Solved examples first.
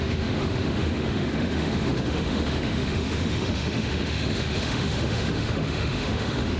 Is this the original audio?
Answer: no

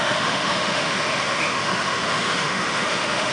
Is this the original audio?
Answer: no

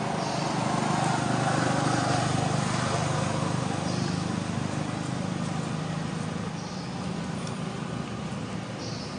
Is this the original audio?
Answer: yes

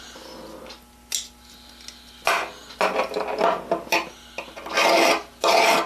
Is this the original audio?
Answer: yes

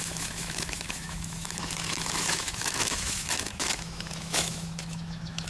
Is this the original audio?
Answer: no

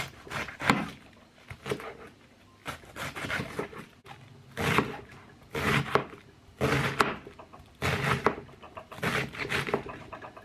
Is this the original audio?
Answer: yes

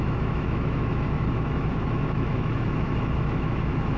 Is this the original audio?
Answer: no